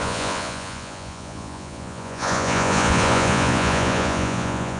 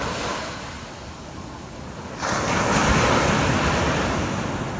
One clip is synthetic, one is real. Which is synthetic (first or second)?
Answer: first